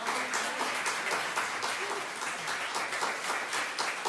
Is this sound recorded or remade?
recorded